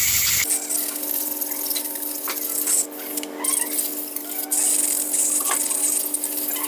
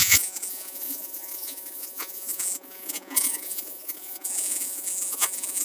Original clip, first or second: first